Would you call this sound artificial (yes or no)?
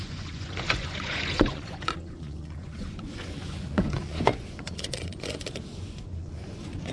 yes